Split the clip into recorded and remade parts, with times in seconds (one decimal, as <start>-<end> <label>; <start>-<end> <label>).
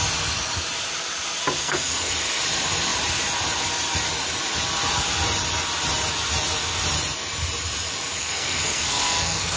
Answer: 0.0-1.6 recorded; 1.6-2.1 remade; 2.1-8.2 recorded; 8.2-9.6 remade